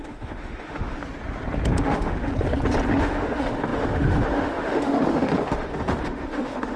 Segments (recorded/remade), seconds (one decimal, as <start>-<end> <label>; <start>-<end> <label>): 0.0-1.0 remade; 1.0-1.8 recorded; 1.8-2.3 remade; 2.3-3.0 recorded; 3.0-6.8 remade